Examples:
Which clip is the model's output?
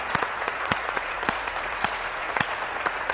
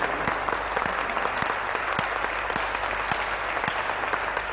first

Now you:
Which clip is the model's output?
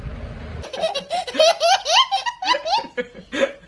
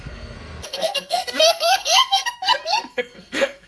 second